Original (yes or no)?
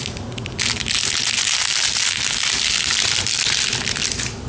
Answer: yes